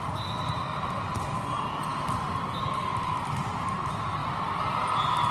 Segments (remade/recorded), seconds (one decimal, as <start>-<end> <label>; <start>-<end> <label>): 0.0-4.2 recorded; 4.2-4.8 remade; 4.8-5.3 recorded